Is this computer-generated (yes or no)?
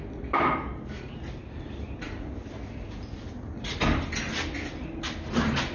no